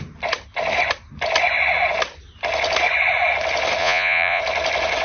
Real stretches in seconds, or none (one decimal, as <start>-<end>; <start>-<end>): 0.0-3.8; 4.4-5.0